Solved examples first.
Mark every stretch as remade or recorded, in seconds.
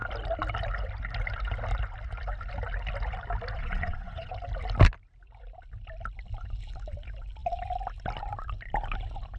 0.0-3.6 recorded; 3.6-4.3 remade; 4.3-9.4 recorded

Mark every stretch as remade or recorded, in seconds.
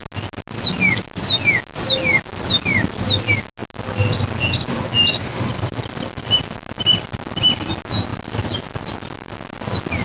0.0-10.0 recorded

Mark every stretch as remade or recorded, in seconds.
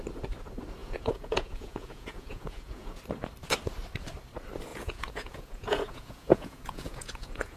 0.0-0.8 recorded; 0.8-3.0 remade; 3.0-4.7 recorded; 4.7-7.6 remade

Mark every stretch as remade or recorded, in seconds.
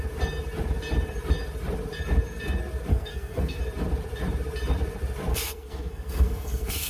0.0-2.9 recorded; 2.9-3.6 remade; 3.6-5.3 recorded; 5.3-6.9 remade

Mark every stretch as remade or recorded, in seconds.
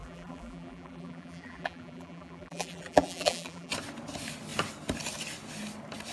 0.0-3.7 remade; 3.7-6.1 recorded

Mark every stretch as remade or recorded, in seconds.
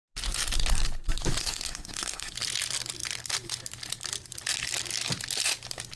0.0-1.4 recorded; 1.4-2.3 remade; 2.3-6.0 recorded